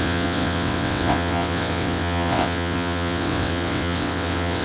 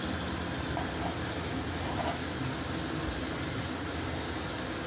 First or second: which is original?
second